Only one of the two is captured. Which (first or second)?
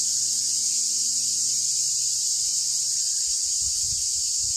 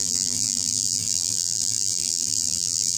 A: first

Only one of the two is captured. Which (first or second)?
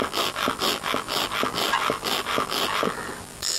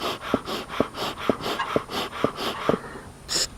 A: second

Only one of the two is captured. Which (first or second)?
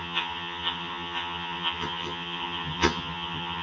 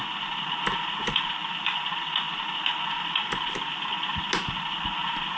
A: second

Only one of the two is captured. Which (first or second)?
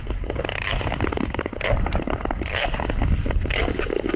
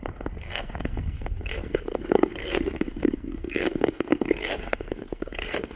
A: first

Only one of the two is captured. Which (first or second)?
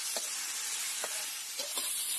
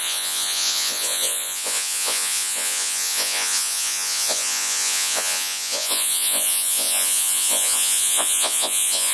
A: first